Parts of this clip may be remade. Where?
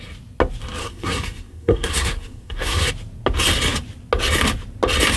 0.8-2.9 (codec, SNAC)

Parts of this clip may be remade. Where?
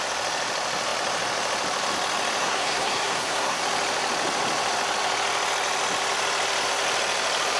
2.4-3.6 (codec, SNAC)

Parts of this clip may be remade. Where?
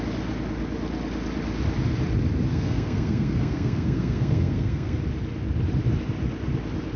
2.5-5.0 (codec, SNAC)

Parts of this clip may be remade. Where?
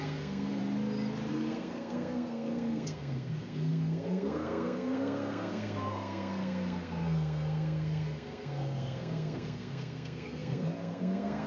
0.0-0.6 (codec, SNAC); 1.3-11.5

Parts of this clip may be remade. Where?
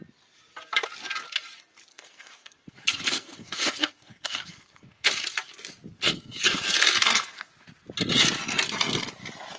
1.9-5.1 (codec, SNAC); 5.9-7.5